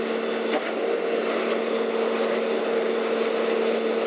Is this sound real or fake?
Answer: real